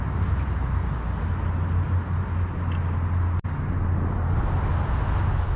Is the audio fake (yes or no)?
no